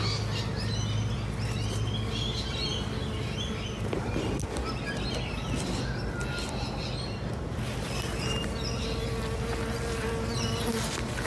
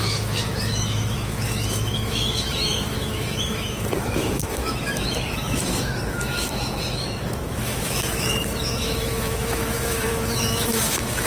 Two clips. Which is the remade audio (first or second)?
second